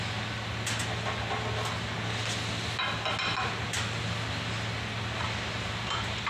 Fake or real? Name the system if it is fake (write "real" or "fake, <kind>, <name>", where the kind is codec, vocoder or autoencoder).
real